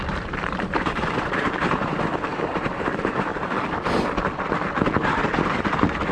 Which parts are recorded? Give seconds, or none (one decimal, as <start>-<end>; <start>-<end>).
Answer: 3.3-5.4